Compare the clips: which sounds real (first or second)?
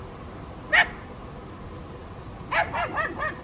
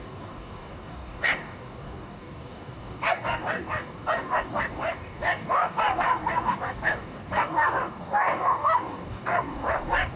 first